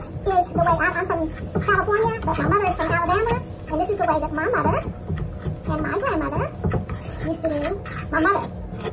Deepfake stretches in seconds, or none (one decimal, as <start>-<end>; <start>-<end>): none